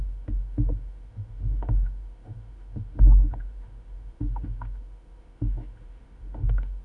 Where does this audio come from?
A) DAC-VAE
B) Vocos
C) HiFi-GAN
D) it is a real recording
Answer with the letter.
A